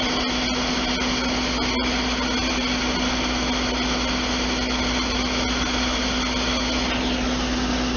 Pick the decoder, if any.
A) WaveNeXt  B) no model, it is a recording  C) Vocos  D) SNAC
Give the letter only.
B